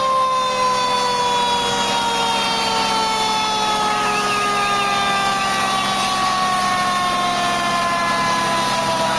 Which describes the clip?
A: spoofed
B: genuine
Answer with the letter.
B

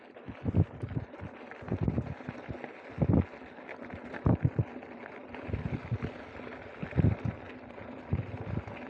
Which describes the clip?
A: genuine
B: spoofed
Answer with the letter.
A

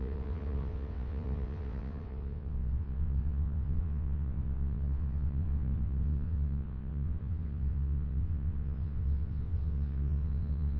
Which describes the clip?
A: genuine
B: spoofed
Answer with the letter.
B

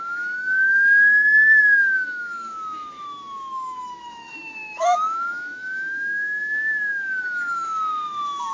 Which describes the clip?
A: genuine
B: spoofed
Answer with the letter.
B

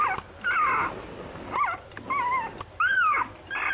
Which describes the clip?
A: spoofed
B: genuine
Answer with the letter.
B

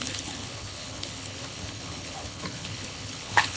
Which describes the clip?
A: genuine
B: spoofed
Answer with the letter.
B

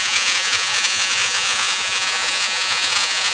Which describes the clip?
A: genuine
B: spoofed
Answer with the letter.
B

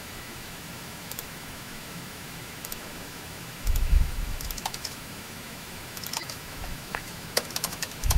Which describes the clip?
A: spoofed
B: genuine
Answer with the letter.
A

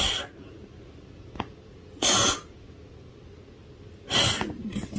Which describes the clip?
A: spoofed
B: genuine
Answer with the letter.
B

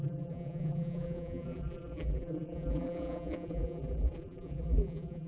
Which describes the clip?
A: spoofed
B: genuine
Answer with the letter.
A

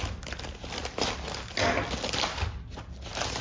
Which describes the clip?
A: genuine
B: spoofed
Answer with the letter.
A